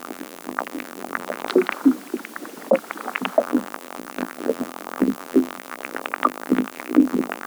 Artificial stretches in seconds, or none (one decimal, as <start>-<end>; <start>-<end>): 0.0-1.5; 3.4-7.5